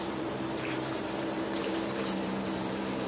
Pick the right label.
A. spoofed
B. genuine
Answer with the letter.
A